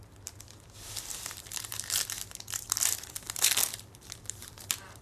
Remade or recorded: remade